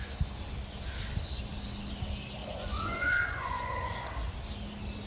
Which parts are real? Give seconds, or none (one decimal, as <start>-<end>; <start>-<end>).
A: 0.0-2.4; 4.1-5.1